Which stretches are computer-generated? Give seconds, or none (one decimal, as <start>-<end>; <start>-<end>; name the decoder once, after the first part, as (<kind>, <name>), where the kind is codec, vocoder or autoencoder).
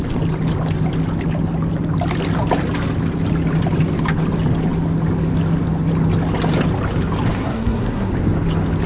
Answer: 7.3-8.1 (codec, SNAC)